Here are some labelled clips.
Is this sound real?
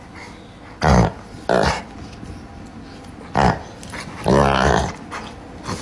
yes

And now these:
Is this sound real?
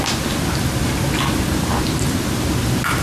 yes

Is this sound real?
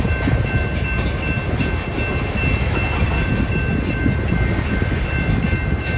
yes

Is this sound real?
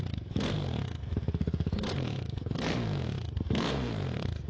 no